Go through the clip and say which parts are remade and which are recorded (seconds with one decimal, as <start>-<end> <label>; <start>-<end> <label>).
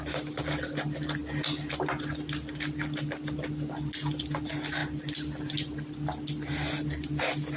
0.0-7.6 recorded